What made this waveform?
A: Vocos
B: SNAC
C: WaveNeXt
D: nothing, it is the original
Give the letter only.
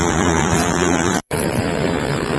A